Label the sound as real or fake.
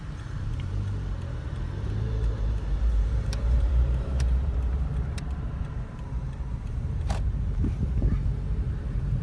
fake